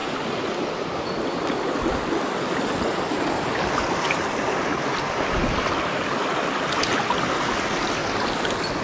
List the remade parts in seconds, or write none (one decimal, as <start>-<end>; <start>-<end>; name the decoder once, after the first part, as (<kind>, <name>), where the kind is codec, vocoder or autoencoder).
none